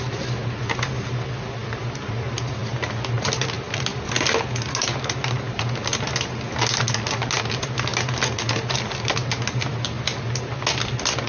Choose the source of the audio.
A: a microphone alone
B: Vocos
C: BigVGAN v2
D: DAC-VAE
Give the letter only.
A